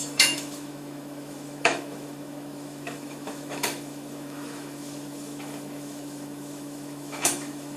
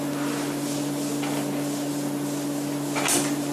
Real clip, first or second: second